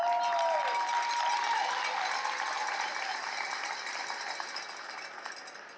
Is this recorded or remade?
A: recorded